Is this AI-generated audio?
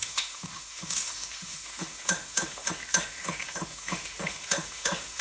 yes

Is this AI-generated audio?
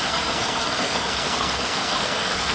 yes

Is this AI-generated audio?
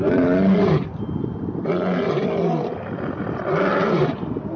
no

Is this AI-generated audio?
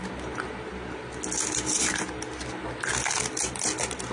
no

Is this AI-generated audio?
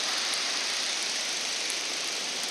yes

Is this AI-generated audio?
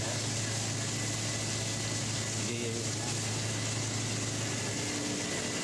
no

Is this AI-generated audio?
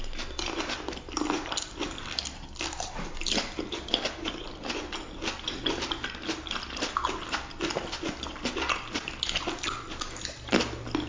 no